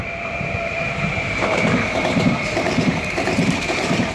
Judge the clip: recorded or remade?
remade